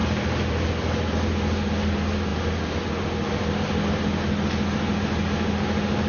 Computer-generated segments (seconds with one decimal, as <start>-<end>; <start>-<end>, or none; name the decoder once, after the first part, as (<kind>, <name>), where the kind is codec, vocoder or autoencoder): none